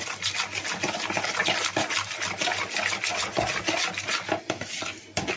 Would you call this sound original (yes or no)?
no